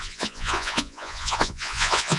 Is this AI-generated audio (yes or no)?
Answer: yes